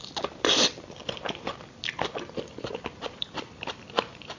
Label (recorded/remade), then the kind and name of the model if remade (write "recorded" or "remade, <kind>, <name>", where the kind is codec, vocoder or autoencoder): remade, vocoder, BigVGAN v2